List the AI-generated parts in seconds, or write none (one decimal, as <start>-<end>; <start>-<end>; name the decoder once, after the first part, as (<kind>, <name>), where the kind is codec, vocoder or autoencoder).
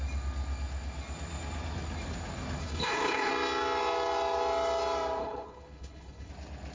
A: 2.6-3.3 (codec, HILCodec); 5.2-6.3